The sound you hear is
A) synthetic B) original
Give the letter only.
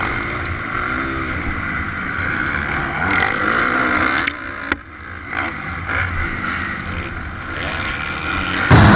B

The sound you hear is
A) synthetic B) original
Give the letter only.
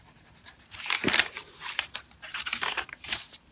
A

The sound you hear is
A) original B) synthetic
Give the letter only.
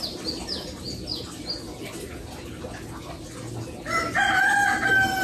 A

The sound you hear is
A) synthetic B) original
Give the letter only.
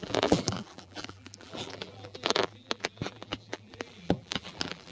A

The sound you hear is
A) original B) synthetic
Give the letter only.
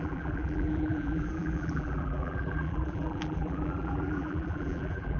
B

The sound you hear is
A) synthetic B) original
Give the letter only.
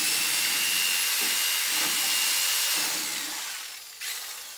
B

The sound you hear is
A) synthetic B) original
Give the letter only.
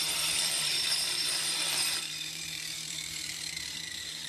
A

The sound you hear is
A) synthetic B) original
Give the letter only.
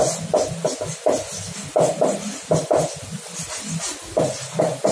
B